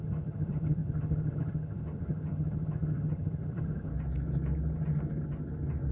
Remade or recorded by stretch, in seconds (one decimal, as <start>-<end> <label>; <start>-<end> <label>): 0.0-3.9 remade; 3.9-5.9 recorded